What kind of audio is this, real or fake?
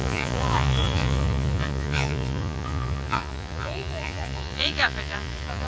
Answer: fake